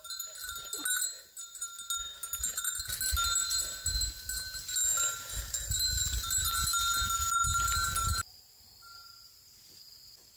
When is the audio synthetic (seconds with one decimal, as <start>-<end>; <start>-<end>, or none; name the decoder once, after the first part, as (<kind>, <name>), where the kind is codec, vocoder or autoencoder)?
none